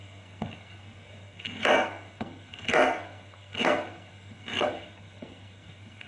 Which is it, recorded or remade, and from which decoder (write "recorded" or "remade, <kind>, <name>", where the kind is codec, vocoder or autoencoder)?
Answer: remade, codec, SNAC